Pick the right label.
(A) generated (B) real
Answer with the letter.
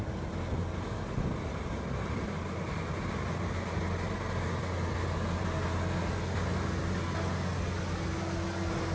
B